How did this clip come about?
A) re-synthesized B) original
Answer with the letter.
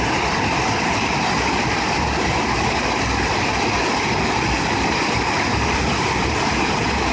B